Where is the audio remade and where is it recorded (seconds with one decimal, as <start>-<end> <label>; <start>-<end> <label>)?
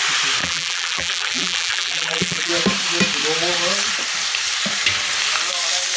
0.0-0.4 recorded; 0.4-2.5 remade; 2.5-6.0 recorded